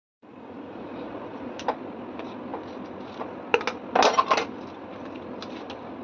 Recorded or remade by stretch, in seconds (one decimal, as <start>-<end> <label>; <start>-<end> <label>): 0.0-1.6 remade; 1.6-6.0 recorded